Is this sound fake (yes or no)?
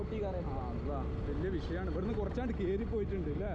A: no